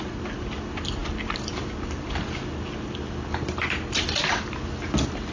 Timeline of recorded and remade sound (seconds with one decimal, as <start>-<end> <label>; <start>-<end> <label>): 0.0-5.3 recorded